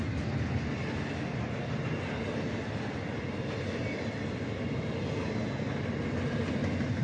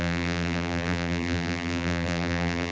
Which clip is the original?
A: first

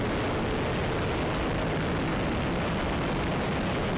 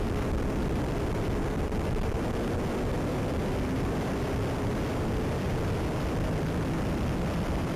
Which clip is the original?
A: first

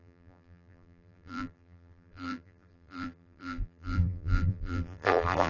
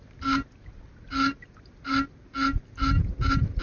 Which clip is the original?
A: second